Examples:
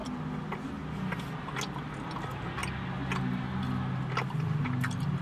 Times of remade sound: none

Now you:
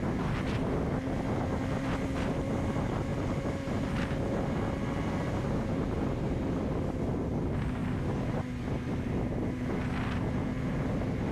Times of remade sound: none

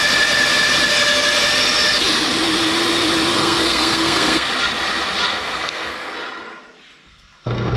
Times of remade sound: 3.3-4.5 (codec, SNAC); 5.3-6.1; 7.0-7.8

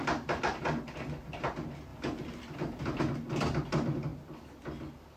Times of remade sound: none